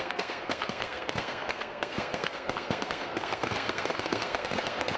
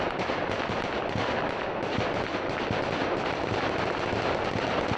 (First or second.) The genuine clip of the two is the second